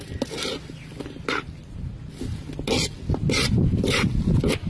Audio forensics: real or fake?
real